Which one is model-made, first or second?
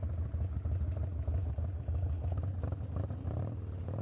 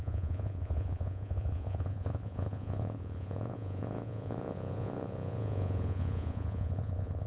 second